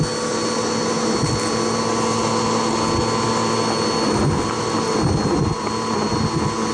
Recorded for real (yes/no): yes